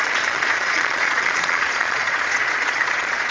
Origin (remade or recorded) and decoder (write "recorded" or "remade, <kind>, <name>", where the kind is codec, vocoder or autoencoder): remade, vocoder, Vocos